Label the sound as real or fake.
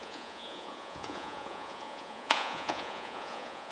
fake